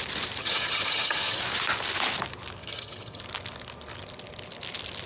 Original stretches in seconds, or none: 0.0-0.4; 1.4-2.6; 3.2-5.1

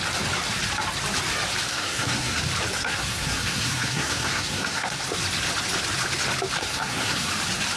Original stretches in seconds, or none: 0.0-1.7; 2.4-2.8; 4.9-6.6; 7.3-7.8

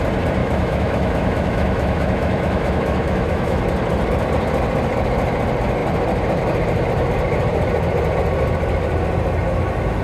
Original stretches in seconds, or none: 0.0-0.4; 3.6-10.0

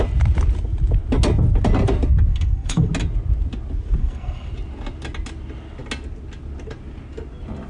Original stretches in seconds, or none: 0.0-2.3; 2.9-4.0; 4.5-7.7

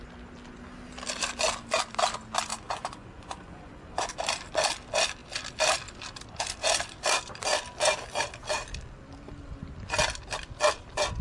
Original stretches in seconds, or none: 0.0-2.5; 4.1-11.2

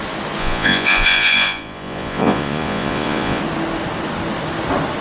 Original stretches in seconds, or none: 0.0-0.4; 3.4-5.0

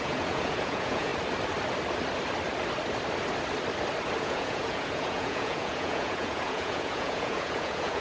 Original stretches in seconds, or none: 1.1-4.2